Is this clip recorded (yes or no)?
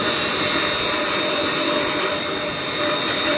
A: yes